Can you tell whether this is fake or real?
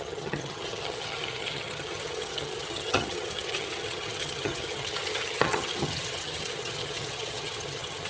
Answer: fake